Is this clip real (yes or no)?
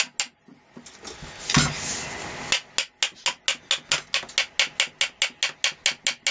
yes